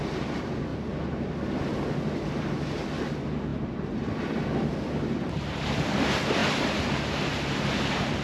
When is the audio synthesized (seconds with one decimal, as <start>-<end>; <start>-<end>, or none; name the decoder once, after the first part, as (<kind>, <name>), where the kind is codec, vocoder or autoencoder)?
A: 3.5-4.4 (vocoder, BigVGAN v2); 6.4-7.3